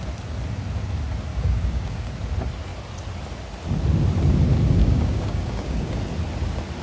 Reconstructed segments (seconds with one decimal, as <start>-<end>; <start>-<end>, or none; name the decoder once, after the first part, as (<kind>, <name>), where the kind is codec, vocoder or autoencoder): 1.3-2.1 (codec, DAC); 4.8-5.9

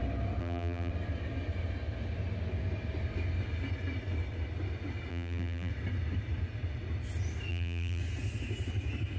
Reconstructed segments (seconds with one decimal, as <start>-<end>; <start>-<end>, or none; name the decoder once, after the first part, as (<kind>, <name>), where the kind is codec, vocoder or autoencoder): 0.4-0.9 (vocoder, BigVGAN v2); 5.1-5.7; 7.5-8.0

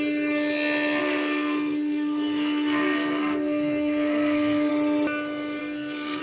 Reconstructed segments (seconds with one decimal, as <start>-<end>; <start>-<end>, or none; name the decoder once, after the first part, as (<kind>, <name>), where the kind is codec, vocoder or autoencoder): 1.0-4.7 (codec, SNAC); 5.6-6.2

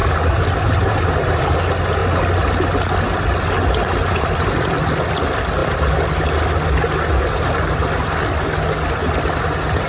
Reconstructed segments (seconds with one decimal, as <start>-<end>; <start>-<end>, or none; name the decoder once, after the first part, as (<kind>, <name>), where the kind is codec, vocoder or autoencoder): none

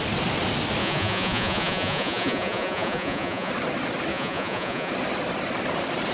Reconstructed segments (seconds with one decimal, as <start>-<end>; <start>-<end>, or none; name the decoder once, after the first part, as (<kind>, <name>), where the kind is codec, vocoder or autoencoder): 0.8-3.5 (vocoder, Vocos); 4.1-4.9